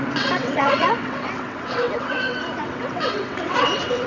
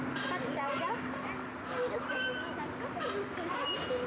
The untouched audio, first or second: second